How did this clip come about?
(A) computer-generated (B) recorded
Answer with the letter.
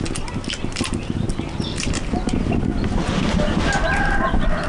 B